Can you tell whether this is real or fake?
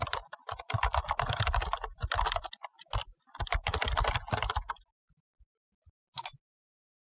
real